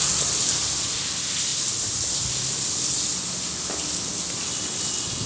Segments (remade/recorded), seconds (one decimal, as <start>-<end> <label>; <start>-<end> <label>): 0.0-5.3 recorded